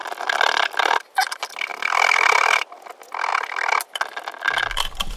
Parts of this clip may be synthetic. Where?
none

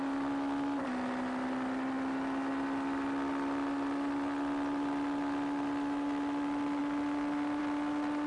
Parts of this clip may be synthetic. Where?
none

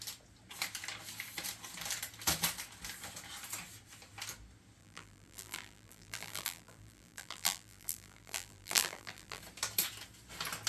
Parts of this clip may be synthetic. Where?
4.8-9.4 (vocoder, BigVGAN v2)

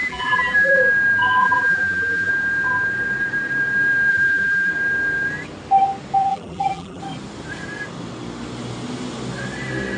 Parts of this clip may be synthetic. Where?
0.0-0.8 (vocoder, BigVGAN v2); 1.4-2.3; 4.1-4.7; 6.3-7.0